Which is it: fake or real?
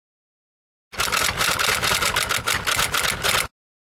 real